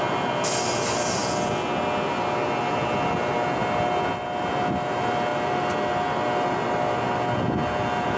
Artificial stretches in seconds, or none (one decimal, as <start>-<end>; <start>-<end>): none